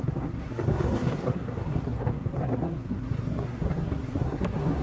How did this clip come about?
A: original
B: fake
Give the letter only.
B